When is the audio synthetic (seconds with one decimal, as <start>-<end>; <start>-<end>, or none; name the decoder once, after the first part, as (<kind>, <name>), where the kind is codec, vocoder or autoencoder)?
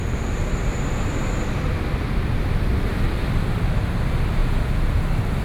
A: 4.4-5.0 (vocoder, Vocos)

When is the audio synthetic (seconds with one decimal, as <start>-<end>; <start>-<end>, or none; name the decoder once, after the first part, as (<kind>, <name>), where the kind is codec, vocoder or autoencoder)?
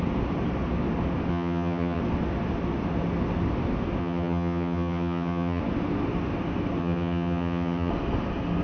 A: 1.3-2.0 (vocoder, HiFi-GAN); 4.0-5.6; 6.8-7.9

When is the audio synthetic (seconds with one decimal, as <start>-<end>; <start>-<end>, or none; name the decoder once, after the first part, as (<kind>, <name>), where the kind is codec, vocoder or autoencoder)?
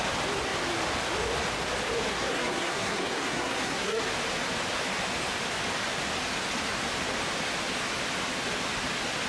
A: 2.1-4.0 (codec, SNAC)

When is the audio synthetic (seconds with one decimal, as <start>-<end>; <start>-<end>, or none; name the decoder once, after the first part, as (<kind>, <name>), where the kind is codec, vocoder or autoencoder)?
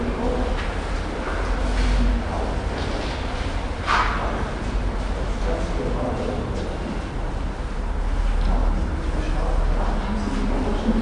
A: none